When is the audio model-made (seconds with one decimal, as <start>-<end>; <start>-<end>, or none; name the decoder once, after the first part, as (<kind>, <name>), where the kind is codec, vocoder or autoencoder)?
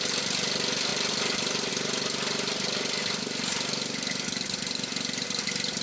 none